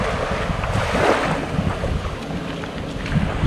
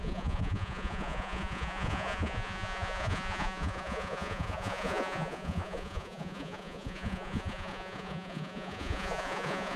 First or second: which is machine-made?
second